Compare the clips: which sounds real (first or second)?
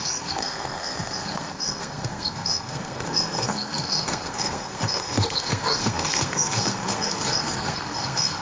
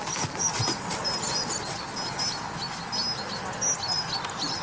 second